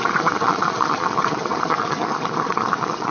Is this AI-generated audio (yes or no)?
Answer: yes